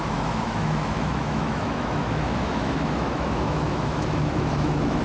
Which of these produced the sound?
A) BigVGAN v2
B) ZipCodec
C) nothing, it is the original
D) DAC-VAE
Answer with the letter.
D